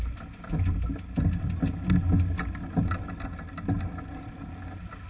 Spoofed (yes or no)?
no